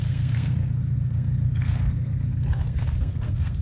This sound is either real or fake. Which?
fake